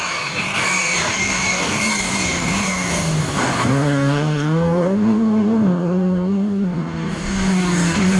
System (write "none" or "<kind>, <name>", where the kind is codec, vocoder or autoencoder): codec, DAC